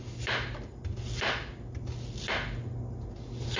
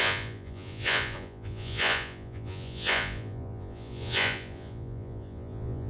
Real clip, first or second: first